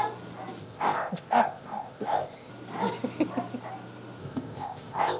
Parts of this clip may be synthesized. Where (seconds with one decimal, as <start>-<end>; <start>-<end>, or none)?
0.6-2.5; 4.2-5.2